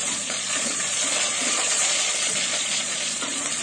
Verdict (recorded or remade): remade